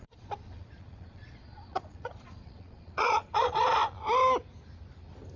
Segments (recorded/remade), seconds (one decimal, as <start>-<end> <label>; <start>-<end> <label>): 0.0-3.8 remade; 3.8-5.4 recorded